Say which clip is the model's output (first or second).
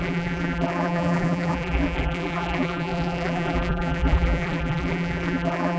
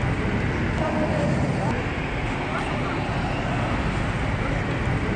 first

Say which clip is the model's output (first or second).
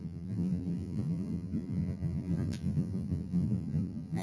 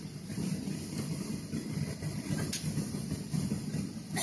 first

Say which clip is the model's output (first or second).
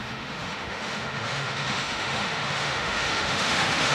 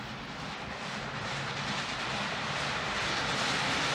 first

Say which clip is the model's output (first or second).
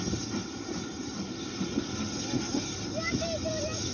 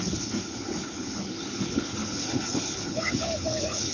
second